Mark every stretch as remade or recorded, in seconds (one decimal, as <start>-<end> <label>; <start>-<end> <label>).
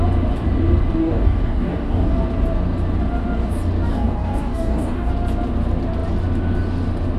0.0-1.0 recorded; 1.0-2.1 remade; 2.1-3.9 recorded; 3.9-5.1 remade; 5.1-7.2 recorded